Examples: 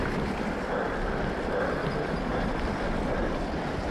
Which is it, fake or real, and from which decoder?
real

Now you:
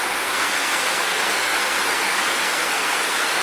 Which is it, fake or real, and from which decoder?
fake, codec, SNAC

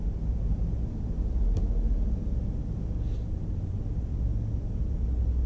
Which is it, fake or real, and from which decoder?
real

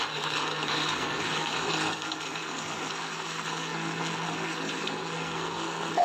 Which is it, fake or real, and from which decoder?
fake, codec, SNAC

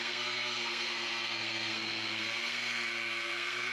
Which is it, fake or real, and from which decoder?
fake, codec, SNAC